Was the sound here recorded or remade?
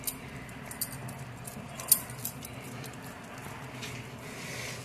recorded